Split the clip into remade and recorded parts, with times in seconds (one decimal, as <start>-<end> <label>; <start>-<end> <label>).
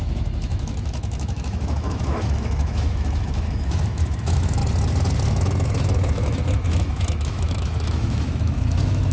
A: 0.0-4.6 remade; 4.6-5.3 recorded; 5.3-9.1 remade